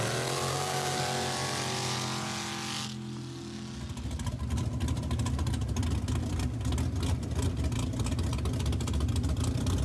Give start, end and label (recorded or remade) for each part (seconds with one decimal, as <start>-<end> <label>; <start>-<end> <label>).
0.0-0.5 recorded; 0.5-1.0 remade; 1.0-9.8 recorded